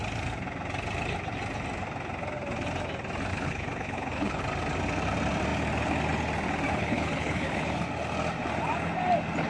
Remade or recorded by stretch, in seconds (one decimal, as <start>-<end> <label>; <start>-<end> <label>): 0.0-3.3 recorded; 3.3-4.4 remade; 4.4-6.7 recorded; 6.7-7.8 remade; 7.8-9.5 recorded